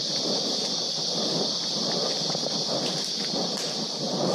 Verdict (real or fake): fake